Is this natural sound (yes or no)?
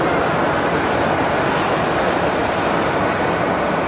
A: yes